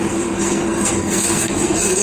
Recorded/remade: remade